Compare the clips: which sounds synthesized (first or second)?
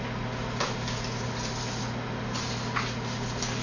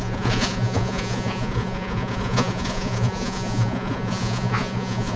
second